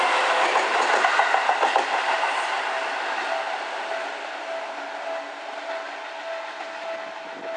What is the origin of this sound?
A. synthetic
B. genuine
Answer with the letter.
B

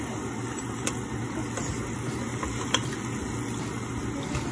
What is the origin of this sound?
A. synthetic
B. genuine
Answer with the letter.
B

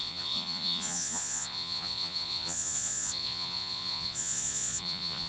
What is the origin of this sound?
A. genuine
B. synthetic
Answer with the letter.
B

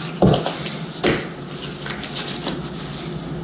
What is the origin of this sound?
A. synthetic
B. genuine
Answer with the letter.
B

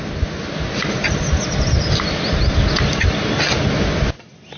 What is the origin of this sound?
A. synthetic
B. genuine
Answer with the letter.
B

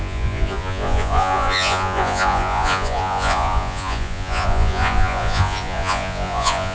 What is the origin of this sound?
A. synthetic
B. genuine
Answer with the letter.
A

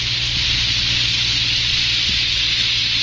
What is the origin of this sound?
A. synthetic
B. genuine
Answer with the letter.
B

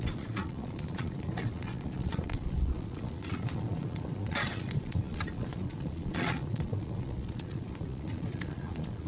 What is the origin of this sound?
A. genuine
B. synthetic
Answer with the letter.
B